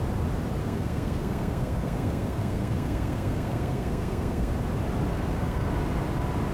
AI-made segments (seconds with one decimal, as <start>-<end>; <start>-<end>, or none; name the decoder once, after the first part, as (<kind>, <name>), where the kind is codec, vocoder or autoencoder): 0.6-4.5 (codec, SNAC); 5.1-5.7